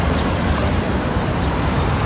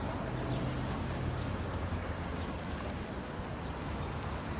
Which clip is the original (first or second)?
second